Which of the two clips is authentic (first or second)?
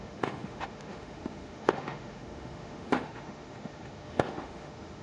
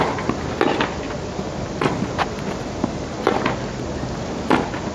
second